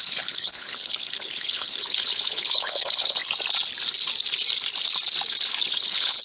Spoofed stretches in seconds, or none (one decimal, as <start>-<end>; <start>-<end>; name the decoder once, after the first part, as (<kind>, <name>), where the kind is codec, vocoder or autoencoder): 0.0-3.2 (codec, HILCodec); 5.7-6.2

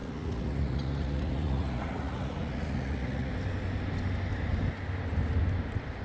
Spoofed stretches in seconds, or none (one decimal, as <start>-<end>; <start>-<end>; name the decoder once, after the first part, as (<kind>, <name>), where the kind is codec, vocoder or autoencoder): 0.0-3.3 (vocoder, Vocos)

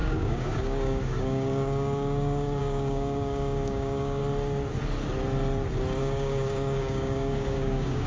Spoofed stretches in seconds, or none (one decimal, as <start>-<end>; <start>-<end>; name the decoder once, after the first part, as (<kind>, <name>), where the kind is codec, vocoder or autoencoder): 0.0-4.2 (codec, DAC); 6.0-8.1

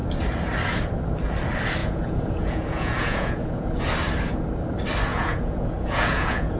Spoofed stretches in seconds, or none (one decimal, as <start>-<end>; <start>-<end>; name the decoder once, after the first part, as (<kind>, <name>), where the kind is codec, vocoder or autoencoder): 1.8-3.8 (vocoder, Vocos); 5.1-6.6

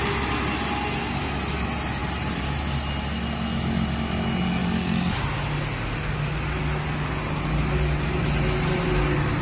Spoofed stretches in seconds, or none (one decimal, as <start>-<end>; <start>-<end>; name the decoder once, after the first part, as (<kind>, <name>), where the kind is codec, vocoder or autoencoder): 2.0-2.6 (vocoder, BigVGAN v2)

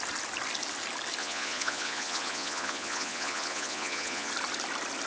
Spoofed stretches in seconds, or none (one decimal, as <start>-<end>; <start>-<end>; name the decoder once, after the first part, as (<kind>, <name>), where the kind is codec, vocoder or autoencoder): 1.2-4.3 (vocoder, Vocos)

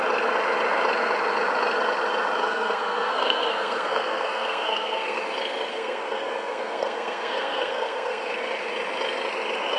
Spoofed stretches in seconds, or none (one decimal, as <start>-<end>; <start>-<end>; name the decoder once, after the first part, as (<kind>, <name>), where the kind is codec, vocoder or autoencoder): 2.4-5.2 (codec, SNAC); 5.7-8.3